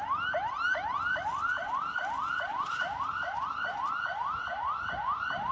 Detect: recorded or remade recorded